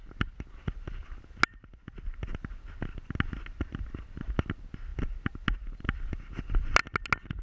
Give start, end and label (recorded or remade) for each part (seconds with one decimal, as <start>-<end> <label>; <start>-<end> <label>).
0.0-7.4 recorded